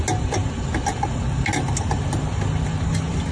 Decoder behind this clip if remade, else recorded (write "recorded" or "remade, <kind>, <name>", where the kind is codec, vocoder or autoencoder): recorded